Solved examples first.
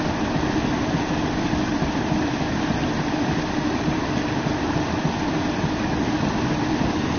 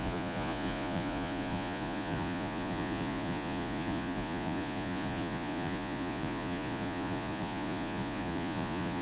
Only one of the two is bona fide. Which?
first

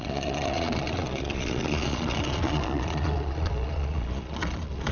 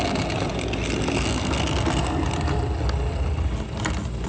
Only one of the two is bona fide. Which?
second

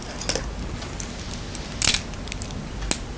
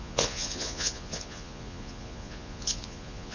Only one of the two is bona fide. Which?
first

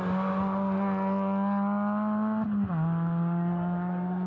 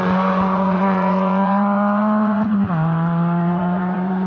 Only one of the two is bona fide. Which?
first